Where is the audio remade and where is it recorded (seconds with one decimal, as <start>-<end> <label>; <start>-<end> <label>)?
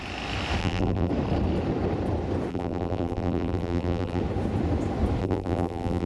0.0-0.6 recorded; 0.6-1.1 remade; 1.1-2.5 recorded; 2.5-4.2 remade; 4.2-5.2 recorded; 5.2-6.1 remade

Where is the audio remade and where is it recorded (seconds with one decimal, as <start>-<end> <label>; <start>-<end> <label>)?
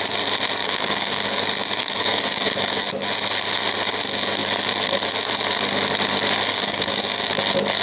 0.0-0.6 recorded; 0.6-1.4 remade; 1.4-1.8 recorded; 1.8-2.9 remade; 2.9-6.5 recorded; 6.5-7.3 remade; 7.3-7.8 recorded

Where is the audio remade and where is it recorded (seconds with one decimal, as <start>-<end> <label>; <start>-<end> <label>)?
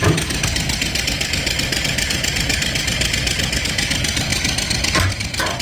0.0-5.6 recorded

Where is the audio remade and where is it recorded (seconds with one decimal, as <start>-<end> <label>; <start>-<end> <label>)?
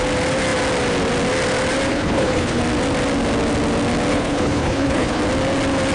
0.0-1.9 recorded; 1.9-2.6 remade; 2.6-4.1 recorded; 4.1-5.2 remade; 5.2-5.9 recorded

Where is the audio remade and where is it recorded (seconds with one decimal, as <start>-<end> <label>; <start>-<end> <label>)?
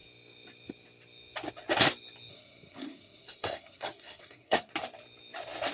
0.0-2.3 recorded; 2.3-4.7 remade; 4.7-5.7 recorded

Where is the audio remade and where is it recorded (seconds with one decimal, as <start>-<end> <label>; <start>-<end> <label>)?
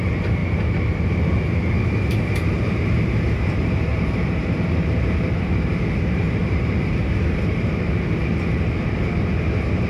0.0-0.4 remade; 0.4-1.2 recorded; 1.2-9.9 remade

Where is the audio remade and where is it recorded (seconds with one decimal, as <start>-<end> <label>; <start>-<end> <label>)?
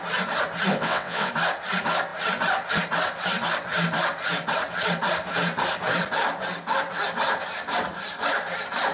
0.0-0.7 recorded; 0.7-1.3 remade; 1.3-8.9 recorded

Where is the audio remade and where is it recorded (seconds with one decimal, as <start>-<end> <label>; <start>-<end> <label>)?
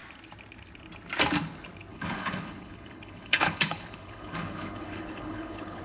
0.0-1.9 recorded; 1.9-5.8 remade